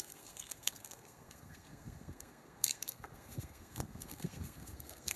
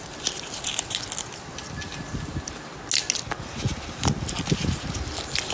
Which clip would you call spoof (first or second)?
first